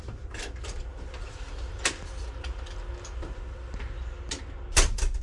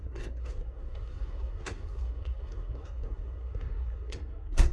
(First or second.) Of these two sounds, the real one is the first